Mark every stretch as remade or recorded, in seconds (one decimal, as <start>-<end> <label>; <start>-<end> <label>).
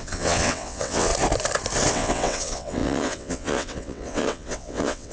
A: 0.0-1.1 remade; 1.1-1.9 recorded; 1.9-5.1 remade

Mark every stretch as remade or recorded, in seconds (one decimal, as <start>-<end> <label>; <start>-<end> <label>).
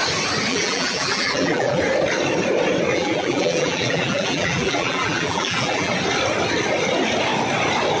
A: 0.0-0.5 recorded; 0.5-1.8 remade; 1.8-2.9 recorded; 2.9-5.9 remade; 5.9-8.0 recorded